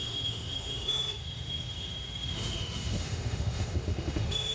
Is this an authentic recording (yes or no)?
no